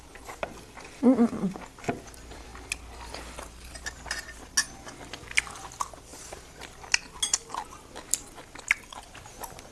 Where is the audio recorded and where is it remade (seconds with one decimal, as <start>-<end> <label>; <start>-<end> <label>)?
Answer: 0.0-9.7 recorded